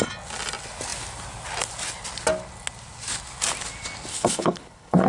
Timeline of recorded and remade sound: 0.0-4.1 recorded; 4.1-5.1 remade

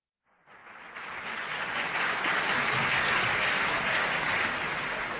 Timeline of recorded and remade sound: 0.0-0.6 remade; 0.6-1.2 recorded; 1.2-2.2 remade; 2.2-5.2 recorded

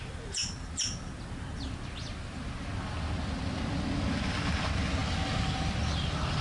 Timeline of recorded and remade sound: 0.0-6.4 recorded

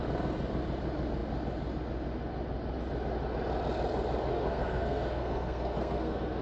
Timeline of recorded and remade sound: 0.0-4.3 recorded; 4.3-6.4 remade

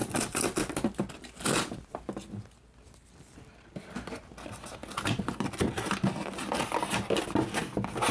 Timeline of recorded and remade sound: 0.0-8.1 recorded

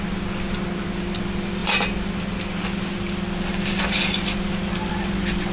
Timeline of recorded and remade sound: 0.0-5.5 recorded

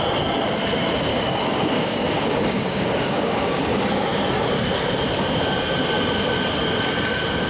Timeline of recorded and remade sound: 0.0-1.1 recorded; 1.1-3.6 remade; 3.6-7.5 recorded

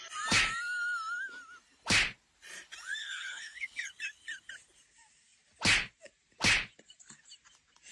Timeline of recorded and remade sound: 0.0-3.0 recorded; 3.0-3.9 remade; 3.9-7.9 recorded